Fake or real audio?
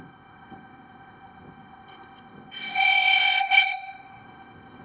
fake